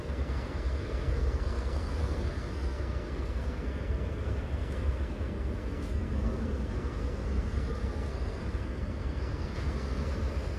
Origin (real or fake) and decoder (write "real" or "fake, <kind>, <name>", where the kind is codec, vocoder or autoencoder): fake, codec, SNAC